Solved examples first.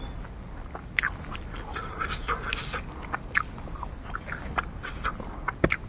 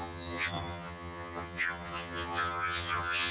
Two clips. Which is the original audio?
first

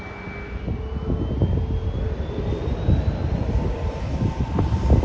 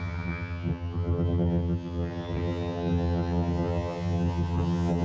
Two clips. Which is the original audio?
first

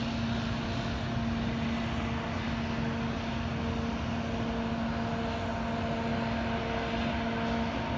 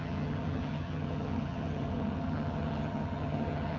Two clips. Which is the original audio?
first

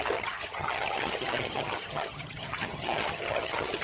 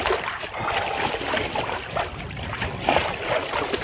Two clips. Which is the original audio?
second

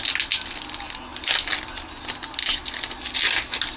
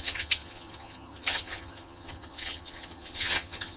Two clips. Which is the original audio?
first